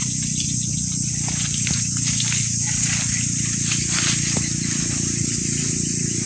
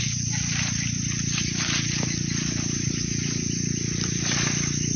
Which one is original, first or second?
first